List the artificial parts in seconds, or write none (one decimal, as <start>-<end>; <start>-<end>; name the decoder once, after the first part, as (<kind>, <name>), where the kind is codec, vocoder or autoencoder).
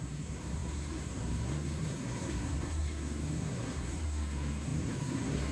0.0-5.5 (codec, SNAC)